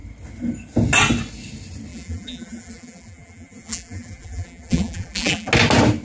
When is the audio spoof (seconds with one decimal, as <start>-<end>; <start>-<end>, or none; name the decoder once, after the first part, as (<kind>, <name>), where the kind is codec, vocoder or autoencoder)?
1.9-5.5 (vocoder, BigVGAN v2)